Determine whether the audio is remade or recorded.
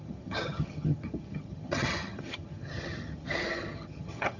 remade